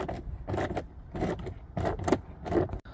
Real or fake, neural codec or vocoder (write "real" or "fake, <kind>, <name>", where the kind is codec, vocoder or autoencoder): fake, vocoder, BigVGAN v2